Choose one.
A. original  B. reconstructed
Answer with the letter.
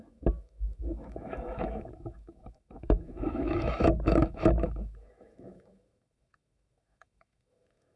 B